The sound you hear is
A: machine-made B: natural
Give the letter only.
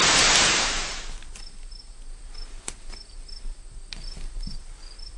B